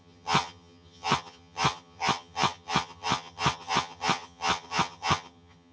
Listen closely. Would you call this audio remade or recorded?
remade